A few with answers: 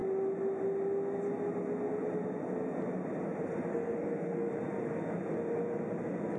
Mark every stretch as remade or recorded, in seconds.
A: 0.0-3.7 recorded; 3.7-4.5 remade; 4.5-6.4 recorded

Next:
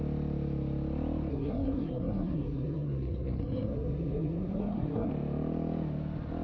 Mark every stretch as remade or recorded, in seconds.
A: 0.0-1.3 recorded; 1.3-5.1 remade; 5.1-6.4 recorded

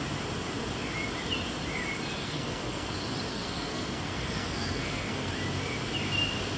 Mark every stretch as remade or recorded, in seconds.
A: 0.0-2.2 recorded; 2.2-2.9 remade; 2.9-3.3 recorded; 3.3-5.3 remade; 5.3-6.6 recorded

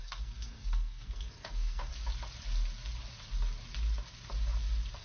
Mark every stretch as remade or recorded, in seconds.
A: 0.0-1.9 remade; 1.9-5.0 recorded

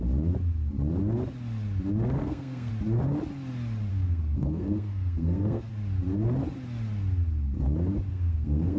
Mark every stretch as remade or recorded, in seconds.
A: 0.0-2.2 recorded; 2.2-2.7 remade; 2.7-3.9 recorded; 3.9-5.7 remade; 5.7-8.1 recorded; 8.1-8.8 remade